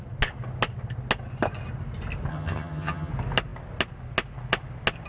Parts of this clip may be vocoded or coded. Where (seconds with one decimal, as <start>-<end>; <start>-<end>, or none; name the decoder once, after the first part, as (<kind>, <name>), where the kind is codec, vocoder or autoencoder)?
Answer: 2.3-3.1 (vocoder, HiFi-GAN)